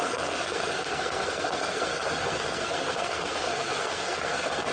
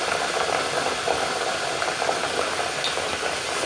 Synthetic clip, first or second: first